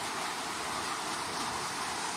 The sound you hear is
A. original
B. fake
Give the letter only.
B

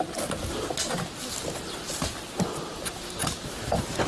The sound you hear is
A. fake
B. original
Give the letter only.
B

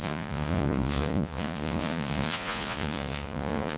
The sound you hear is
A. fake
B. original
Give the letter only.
A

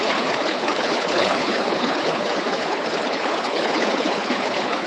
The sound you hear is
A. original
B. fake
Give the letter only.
B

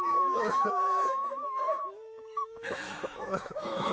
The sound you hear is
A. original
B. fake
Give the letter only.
B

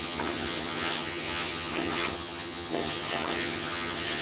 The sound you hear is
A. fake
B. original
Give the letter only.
A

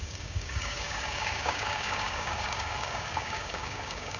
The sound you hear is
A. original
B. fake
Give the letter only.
B